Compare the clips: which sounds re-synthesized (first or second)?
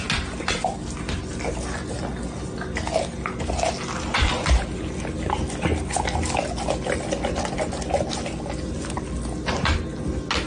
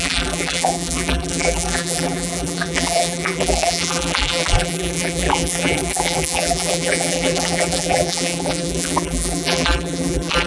second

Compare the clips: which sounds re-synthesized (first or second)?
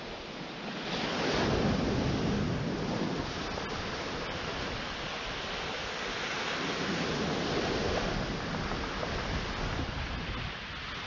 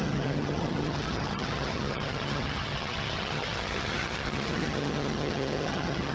second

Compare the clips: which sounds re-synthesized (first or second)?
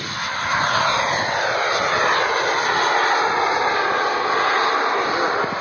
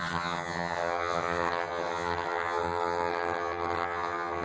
second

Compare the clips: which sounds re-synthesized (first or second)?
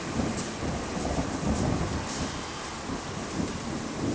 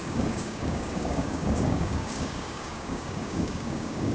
second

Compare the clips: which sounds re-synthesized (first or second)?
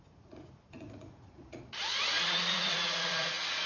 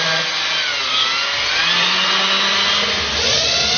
first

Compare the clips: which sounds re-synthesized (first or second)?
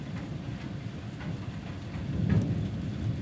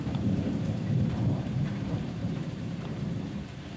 second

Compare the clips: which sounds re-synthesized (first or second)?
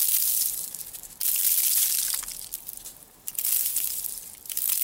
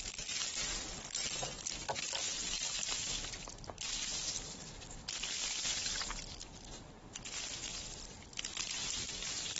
first